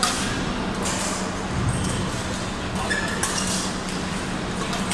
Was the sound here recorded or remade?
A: recorded